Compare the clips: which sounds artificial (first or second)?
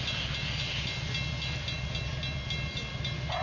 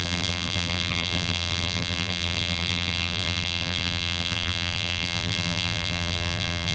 second